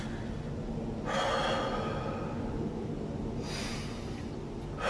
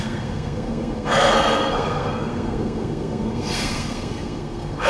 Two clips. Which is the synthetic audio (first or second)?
second